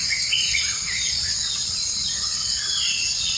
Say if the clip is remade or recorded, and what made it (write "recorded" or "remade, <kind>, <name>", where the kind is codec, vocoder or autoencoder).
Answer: remade, vocoder, Vocos